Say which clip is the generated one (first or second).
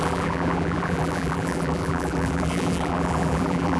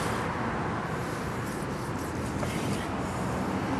first